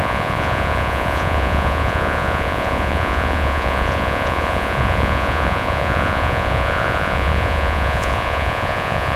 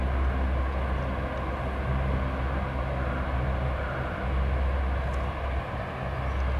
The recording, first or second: second